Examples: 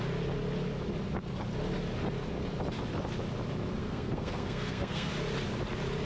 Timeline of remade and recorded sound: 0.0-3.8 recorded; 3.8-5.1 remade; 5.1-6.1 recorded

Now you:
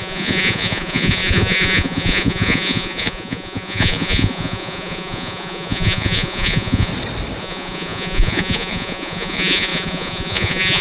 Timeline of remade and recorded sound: 0.0-6.9 remade; 6.9-7.4 recorded; 7.4-10.8 remade

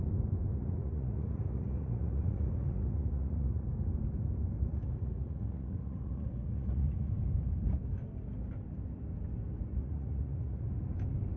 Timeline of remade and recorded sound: 0.0-0.5 recorded; 0.5-3.7 remade; 3.7-4.7 recorded; 4.7-7.1 remade; 7.1-9.7 recorded; 9.7-10.7 remade; 10.7-11.4 recorded

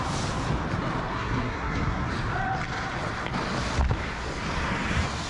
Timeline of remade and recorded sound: 0.0-1.1 recorded; 1.1-2.1 remade; 2.1-5.3 recorded

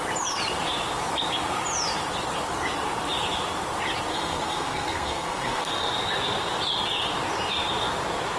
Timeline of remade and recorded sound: 0.0-4.1 recorded; 4.1-5.9 remade; 5.9-8.4 recorded